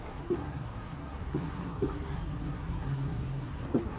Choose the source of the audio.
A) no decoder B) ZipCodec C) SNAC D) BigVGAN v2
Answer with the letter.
C